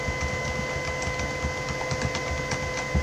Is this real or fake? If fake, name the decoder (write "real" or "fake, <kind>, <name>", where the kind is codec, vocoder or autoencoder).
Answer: real